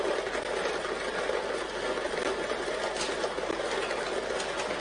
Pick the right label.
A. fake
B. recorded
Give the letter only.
B